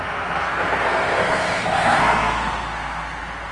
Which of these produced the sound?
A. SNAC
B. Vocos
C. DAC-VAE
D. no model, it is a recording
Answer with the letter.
A